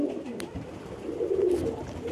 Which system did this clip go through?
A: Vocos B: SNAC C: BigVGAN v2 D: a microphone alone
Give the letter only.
C